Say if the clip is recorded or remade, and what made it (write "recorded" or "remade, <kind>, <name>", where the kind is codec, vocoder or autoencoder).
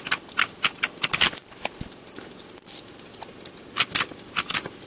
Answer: recorded